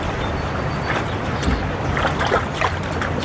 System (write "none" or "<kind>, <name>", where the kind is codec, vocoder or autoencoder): none